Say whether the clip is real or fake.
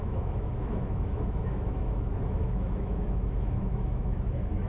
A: fake